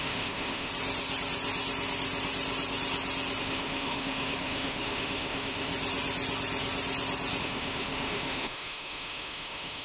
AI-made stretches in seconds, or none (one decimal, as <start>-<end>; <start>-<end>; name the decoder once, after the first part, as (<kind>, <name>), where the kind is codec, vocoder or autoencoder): 0.0-0.7 (autoencoder, DAC-VAE); 3.4-5.7; 7.4-9.8